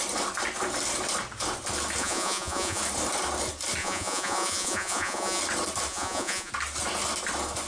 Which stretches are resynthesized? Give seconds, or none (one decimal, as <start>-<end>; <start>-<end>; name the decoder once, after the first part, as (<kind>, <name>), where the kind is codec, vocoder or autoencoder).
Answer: 2.0-2.8 (vocoder, Vocos); 3.8-5.4; 5.9-6.5